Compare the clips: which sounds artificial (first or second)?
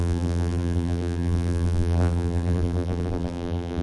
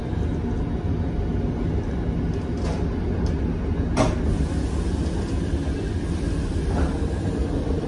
first